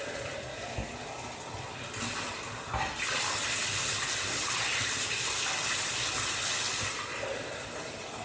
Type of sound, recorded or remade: recorded